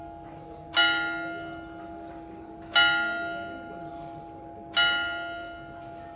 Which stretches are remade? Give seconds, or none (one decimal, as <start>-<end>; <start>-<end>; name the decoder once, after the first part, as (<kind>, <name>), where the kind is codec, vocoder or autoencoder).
none